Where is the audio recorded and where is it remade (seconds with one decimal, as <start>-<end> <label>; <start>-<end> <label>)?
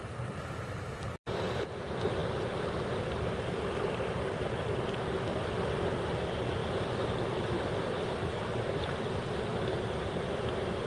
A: 0.0-10.9 remade